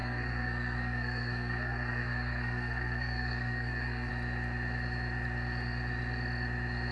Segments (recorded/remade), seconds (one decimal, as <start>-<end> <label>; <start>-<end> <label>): 0.0-4.1 remade; 4.1-6.9 recorded